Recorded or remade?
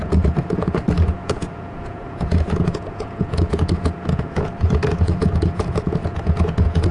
remade